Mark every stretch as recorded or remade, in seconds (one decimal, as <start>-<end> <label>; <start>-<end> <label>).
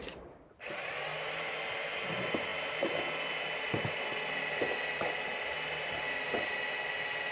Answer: 0.0-7.3 recorded